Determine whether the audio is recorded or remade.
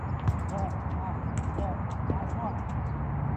recorded